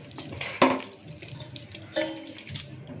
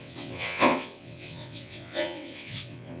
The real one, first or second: first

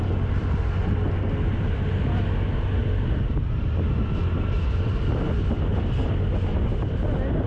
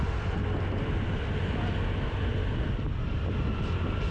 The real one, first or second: first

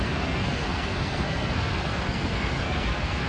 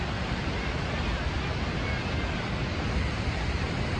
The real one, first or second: second